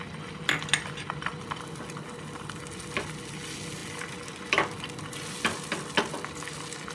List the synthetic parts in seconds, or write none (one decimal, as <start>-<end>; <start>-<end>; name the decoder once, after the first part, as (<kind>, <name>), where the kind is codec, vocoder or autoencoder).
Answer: none